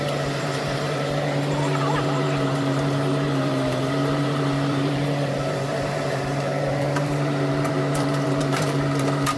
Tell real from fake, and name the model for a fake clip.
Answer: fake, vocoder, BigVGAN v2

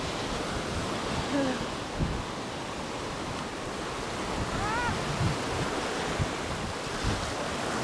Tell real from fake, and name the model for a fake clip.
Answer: real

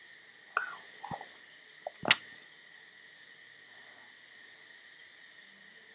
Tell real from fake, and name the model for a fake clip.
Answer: real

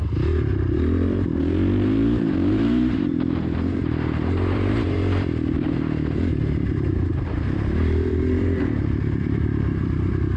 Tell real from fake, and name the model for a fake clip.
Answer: fake, vocoder, BigVGAN v2